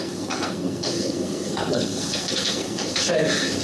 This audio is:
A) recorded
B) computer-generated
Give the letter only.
B